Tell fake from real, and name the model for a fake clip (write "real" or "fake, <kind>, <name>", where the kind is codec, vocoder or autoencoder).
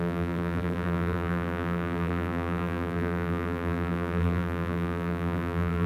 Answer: fake, vocoder, BigVGAN v2